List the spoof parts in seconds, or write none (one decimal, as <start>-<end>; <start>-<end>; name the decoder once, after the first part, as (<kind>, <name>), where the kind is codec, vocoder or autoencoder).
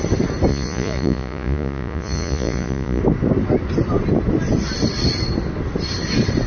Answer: 0.5-3.0 (vocoder, Vocos)